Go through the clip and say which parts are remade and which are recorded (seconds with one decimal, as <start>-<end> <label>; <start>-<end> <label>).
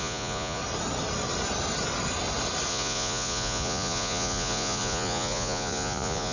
0.0-0.6 remade; 0.6-2.7 recorded; 2.7-6.3 remade